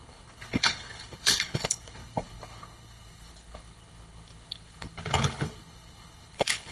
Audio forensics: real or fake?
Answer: fake